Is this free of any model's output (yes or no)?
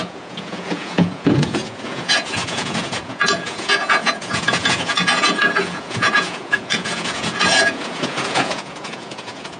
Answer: no